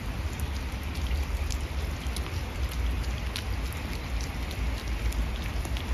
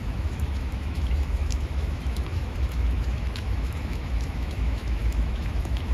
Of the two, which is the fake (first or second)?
second